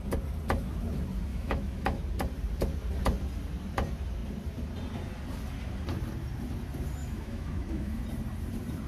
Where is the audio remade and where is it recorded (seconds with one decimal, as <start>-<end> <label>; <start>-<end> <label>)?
0.0-1.3 recorded; 1.3-2.0 remade; 2.0-7.0 recorded; 7.0-8.0 remade; 8.0-8.9 recorded